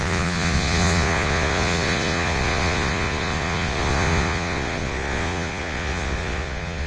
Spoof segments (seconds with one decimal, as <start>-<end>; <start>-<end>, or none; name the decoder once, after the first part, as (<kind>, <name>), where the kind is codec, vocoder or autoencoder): 0.0-6.9 (vocoder, Vocos)